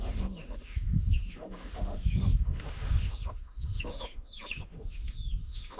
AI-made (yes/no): yes